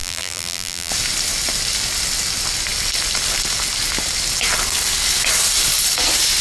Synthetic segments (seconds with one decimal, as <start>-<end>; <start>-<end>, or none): 0.0-0.9